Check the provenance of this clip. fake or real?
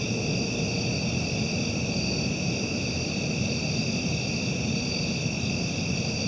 real